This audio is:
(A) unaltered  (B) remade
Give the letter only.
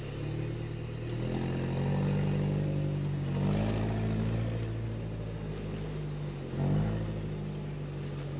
A